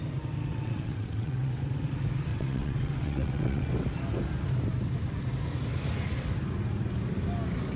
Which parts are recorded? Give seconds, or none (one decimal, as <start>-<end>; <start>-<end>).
0.0-0.5; 1.6-2.3; 3.7-7.8